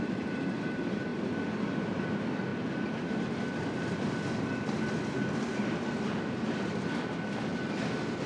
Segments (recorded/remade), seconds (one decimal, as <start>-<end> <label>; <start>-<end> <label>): 0.0-1.1 remade; 1.1-1.9 recorded; 1.9-7.5 remade; 7.5-8.3 recorded